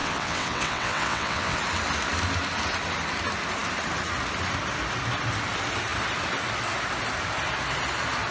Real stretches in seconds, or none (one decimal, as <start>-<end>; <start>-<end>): 1.6-8.3